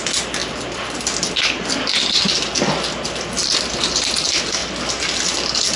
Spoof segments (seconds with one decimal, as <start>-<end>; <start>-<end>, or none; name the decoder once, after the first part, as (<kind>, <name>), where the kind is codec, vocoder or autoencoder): none